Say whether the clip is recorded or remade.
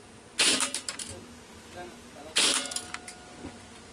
recorded